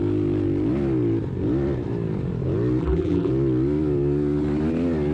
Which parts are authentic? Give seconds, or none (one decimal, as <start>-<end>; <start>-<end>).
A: 0.0-2.8; 3.3-5.1